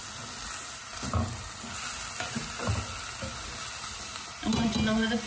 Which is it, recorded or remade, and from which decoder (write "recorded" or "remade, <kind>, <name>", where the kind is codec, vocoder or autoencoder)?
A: recorded